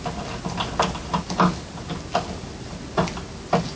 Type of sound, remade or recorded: recorded